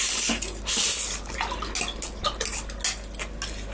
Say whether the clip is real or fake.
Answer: real